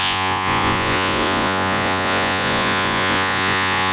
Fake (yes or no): yes